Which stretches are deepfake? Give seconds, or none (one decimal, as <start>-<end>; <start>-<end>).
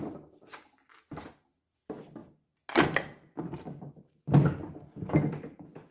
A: none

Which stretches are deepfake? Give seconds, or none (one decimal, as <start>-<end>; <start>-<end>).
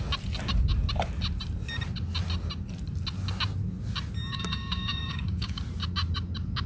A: 4.3-5.6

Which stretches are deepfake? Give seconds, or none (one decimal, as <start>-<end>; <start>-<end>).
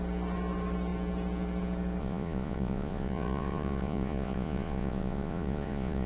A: 2.0-6.1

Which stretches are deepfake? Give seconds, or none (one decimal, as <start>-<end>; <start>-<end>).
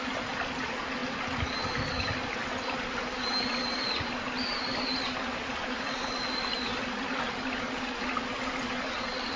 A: none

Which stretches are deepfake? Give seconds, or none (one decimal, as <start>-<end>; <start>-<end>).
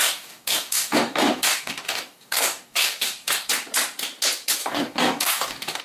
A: 0.0-3.5; 4.6-5.8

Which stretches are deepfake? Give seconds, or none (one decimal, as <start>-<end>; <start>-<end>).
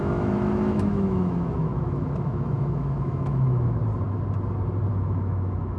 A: 0.0-3.8; 4.9-5.8